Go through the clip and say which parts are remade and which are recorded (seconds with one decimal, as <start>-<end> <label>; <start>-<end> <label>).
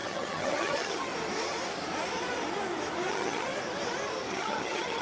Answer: 0.0-1.1 remade; 1.1-3.1 recorded; 3.1-3.5 remade; 3.5-4.3 recorded; 4.3-5.0 remade